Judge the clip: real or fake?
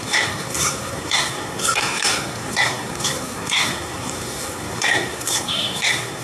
fake